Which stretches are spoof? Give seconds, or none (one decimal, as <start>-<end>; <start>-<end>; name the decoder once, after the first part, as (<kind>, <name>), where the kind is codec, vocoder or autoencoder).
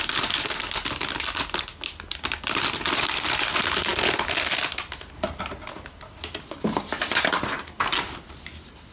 none